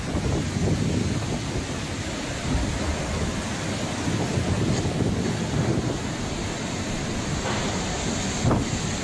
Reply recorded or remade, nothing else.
recorded